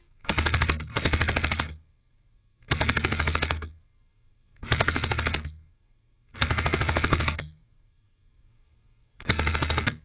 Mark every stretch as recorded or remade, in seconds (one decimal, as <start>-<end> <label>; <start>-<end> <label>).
0.0-10.0 remade